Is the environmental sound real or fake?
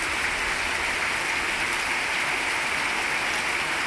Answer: real